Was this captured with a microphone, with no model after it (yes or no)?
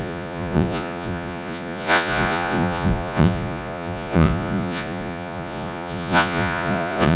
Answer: no